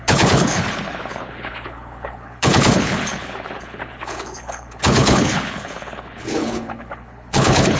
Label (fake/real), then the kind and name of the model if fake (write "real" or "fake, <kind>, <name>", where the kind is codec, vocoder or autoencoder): fake, codec, HILCodec